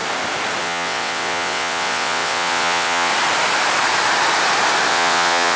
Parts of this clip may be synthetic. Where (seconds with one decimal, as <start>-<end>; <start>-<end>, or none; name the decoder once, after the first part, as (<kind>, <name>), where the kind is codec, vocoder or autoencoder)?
0.6-3.1 (vocoder, WaveNeXt); 4.9-5.6